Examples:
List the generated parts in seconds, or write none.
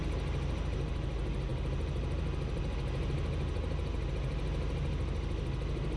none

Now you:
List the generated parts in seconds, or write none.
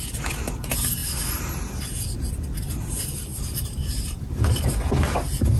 3.3-4.4 (vocoder, BigVGAN v2)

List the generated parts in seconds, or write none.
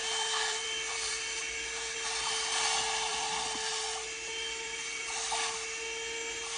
0.0-1.1 (vocoder, BigVGAN v2); 3.1-5.2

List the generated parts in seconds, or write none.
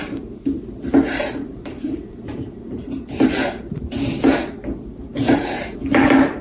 0.0-3.8 (vocoder, BigVGAN v2); 5.1-5.7